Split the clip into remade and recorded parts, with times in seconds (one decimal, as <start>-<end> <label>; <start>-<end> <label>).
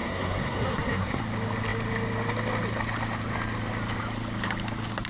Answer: 0.0-1.2 remade; 1.2-5.1 recorded